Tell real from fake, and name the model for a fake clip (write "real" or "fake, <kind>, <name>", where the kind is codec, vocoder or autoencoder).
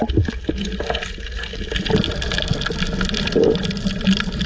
real